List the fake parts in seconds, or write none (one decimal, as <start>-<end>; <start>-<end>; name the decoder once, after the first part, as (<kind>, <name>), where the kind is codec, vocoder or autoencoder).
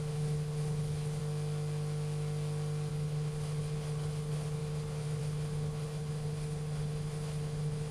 0.0-1.2 (codec, HILCodec); 2.9-7.9